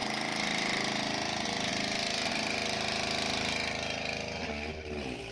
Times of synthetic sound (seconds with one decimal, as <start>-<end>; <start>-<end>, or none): none